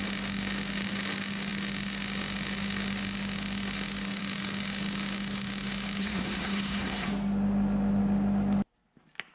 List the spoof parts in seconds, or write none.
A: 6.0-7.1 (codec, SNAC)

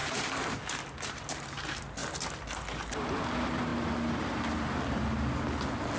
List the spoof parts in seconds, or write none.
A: 0.0-0.5 (vocoder, BigVGAN v2)

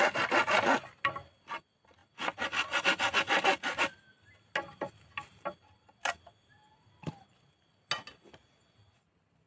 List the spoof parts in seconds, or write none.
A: none